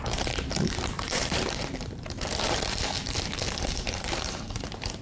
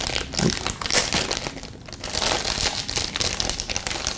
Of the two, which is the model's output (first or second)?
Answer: first